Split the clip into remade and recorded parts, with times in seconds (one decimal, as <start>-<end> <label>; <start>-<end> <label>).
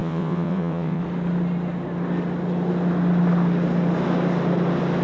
0.0-1.0 remade; 1.0-5.0 recorded